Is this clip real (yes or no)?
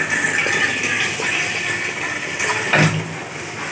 yes